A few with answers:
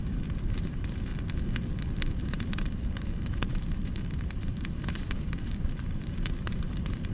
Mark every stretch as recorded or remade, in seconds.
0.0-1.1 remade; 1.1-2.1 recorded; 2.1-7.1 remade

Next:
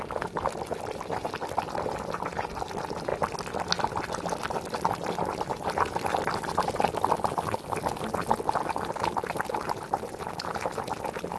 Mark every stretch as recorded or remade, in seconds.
0.0-11.4 recorded

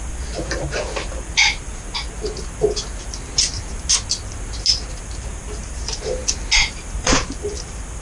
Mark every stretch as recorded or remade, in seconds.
0.0-1.4 remade; 1.4-5.0 recorded; 5.0-6.2 remade; 6.2-6.7 recorded; 6.7-8.0 remade

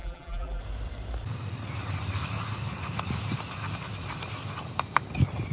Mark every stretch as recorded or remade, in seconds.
0.0-0.6 remade; 0.6-5.5 recorded

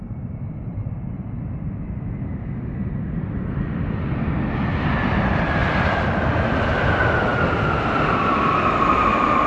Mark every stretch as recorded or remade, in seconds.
0.0-9.5 recorded